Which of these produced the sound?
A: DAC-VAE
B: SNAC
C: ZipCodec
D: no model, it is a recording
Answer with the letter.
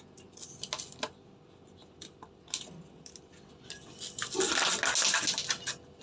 D